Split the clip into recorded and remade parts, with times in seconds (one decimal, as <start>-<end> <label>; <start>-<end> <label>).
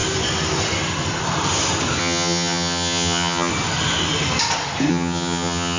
0.0-2.0 recorded; 2.0-3.5 remade; 3.5-4.9 recorded; 4.9-5.8 remade